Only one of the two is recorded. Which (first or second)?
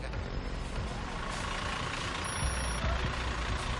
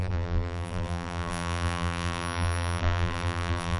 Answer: first